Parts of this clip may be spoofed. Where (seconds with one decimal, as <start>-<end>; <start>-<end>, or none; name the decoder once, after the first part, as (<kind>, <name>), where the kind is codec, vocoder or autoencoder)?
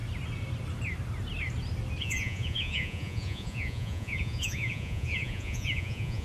2.0-6.2 (vocoder, Vocos)